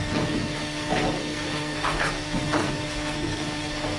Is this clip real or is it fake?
fake